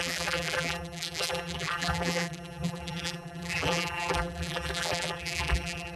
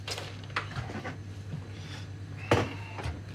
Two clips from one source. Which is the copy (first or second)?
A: first